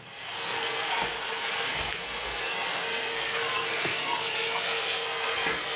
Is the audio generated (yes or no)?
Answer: yes